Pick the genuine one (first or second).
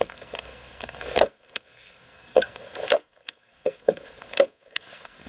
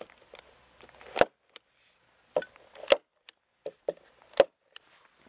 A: second